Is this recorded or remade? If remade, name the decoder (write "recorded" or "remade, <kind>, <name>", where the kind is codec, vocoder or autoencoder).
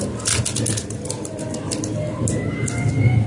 recorded